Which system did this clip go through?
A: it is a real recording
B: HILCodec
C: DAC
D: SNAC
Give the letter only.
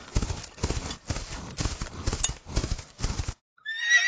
A